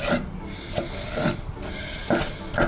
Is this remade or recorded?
recorded